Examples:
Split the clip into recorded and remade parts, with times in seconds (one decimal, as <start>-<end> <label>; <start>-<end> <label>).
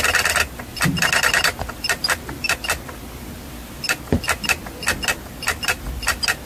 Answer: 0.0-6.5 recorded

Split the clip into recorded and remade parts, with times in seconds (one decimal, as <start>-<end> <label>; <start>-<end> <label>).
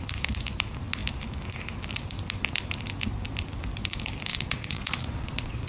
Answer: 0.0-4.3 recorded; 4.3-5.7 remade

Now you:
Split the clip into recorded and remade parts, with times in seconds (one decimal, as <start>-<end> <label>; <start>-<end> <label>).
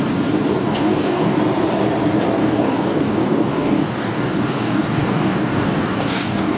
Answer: 0.0-0.6 recorded; 0.6-1.4 remade; 1.4-2.4 recorded; 2.4-6.6 remade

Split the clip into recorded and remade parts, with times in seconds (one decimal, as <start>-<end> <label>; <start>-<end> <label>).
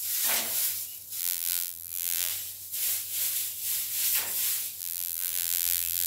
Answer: 0.0-1.2 recorded; 1.2-2.3 remade; 2.3-4.8 recorded; 4.8-6.1 remade